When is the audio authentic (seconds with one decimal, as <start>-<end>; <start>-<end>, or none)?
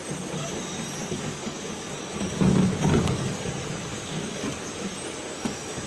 0.0-1.0; 3.5-3.9; 4.7-5.9